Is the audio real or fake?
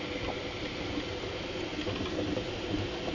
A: real